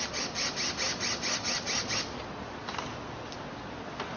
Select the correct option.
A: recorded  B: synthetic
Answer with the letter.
A